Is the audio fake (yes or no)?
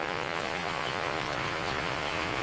yes